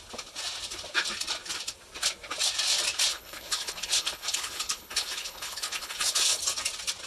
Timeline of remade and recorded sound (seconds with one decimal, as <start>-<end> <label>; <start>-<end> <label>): 0.0-3.1 recorded; 3.1-6.4 remade; 6.4-7.1 recorded